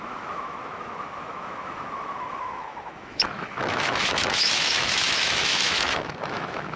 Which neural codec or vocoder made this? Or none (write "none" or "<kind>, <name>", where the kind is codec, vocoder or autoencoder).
autoencoder, DAC-VAE